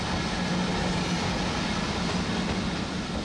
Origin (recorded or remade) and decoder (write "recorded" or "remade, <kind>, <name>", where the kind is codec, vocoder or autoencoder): recorded